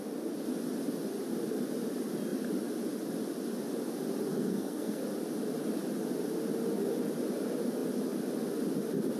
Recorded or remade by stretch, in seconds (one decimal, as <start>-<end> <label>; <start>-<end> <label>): 0.0-4.3 recorded; 4.3-5.0 remade; 5.0-9.2 recorded